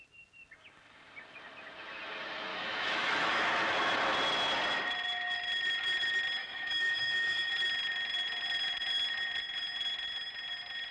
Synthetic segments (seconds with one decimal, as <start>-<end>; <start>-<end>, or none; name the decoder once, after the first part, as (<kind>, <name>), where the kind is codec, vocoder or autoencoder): 2.5-3.3 (autoencoder, DAC-VAE); 6.4-7.5